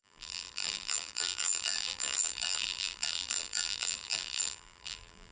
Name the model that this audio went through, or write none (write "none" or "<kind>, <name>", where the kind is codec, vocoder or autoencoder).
vocoder, BigVGAN v2